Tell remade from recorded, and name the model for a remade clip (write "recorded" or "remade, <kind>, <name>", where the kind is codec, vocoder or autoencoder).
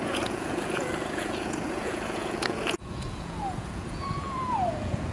remade, vocoder, Vocos